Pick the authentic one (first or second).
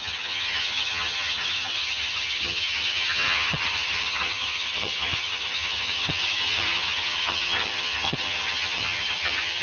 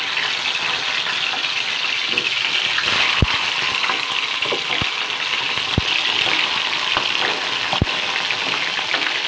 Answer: second